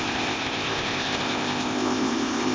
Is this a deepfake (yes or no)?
yes